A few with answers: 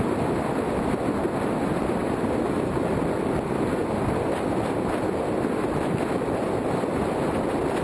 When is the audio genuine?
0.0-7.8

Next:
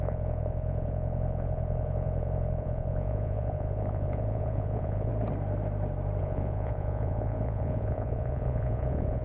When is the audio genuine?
5.1-6.2